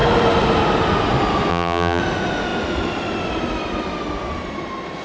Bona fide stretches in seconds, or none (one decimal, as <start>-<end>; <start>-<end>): 0.0-1.5; 2.0-5.0